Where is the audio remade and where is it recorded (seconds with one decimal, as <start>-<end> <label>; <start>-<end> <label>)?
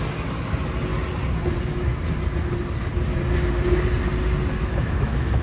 0.0-4.6 recorded; 4.6-5.4 remade